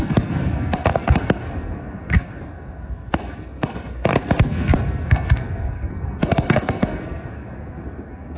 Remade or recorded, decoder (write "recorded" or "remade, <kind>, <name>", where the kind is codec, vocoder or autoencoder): remade, codec, SNAC